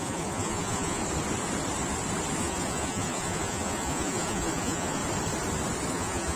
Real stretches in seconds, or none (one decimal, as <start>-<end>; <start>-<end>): 1.0-2.4; 5.0-5.9